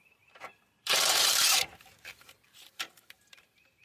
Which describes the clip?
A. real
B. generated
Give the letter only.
B